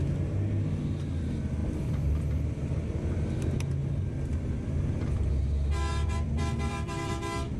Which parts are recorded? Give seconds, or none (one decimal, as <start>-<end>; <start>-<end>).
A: 0.0-1.6; 2.9-3.8; 5.3-5.9; 7.1-7.6